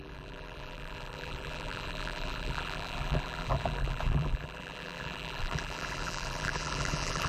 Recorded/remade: remade